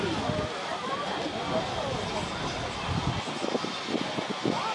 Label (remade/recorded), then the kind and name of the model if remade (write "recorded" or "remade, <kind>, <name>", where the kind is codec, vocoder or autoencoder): recorded